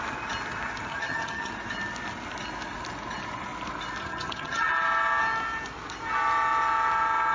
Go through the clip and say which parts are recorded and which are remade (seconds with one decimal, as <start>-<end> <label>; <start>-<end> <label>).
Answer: 0.0-0.9 recorded; 0.9-1.5 remade; 1.5-4.0 recorded; 4.0-4.7 remade; 4.7-7.3 recorded